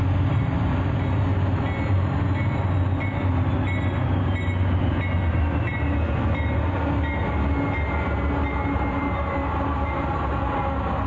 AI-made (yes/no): no